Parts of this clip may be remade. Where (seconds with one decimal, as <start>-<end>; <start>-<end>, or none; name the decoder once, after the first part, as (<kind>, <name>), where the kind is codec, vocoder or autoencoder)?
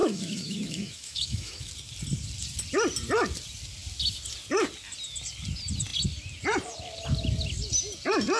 0.0-1.7 (autoencoder, DAC-VAE)